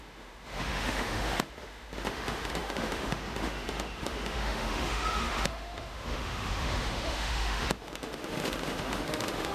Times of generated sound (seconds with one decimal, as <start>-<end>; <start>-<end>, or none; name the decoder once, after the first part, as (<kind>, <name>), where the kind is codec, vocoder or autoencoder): 0.0-9.5 (autoencoder, DAC-VAE)